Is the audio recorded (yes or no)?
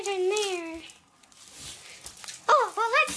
yes